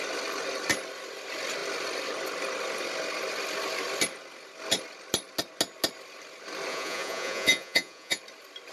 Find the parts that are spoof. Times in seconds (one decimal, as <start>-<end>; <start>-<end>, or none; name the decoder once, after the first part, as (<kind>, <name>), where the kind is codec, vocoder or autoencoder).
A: 6.7-8.2 (vocoder, Vocos)